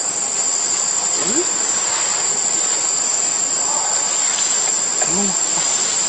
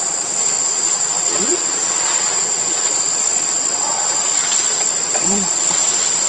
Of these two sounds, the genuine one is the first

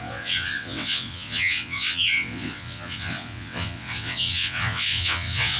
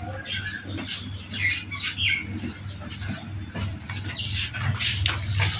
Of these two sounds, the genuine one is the second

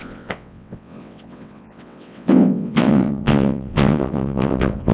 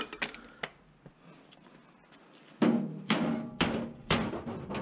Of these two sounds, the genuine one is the second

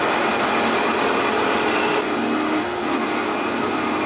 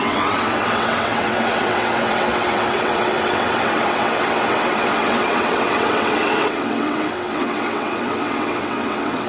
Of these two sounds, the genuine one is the first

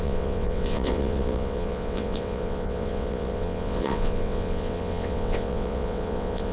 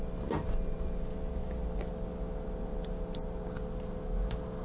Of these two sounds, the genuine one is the second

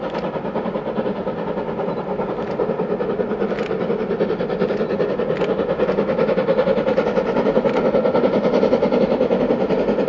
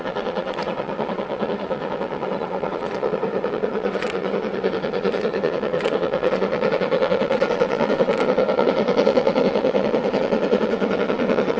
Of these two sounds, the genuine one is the first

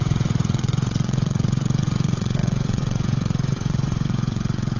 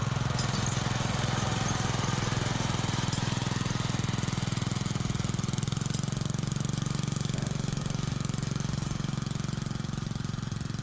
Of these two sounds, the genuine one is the second